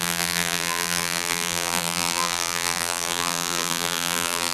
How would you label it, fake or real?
fake